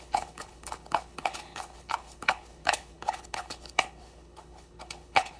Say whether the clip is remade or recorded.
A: remade